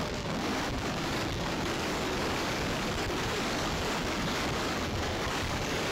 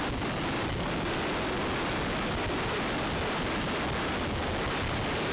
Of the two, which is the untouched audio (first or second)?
second